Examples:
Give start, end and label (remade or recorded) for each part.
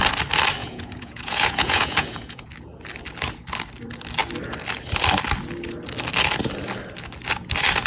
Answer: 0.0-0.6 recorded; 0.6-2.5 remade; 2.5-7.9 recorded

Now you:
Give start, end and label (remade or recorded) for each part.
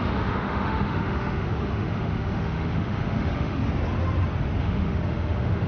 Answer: 0.0-3.6 remade; 3.6-4.6 recorded; 4.6-5.7 remade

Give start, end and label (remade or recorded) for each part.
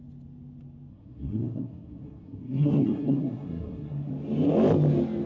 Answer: 0.0-0.9 recorded; 0.9-4.1 remade; 4.1-5.3 recorded